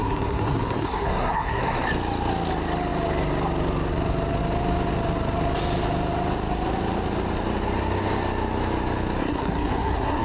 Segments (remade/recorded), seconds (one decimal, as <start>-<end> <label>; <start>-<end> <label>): 0.0-1.6 remade; 1.6-9.2 recorded; 9.2-10.2 remade